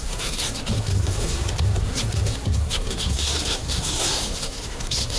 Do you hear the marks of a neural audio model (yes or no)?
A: yes